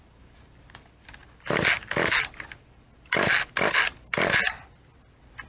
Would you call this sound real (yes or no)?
yes